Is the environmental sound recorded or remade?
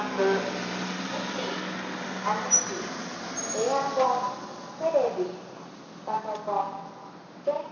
recorded